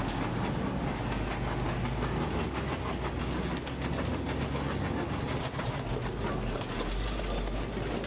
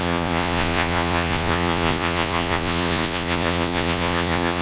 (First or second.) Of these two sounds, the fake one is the second